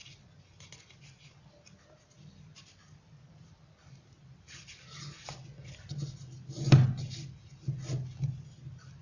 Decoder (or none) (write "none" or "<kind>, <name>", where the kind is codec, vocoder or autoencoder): none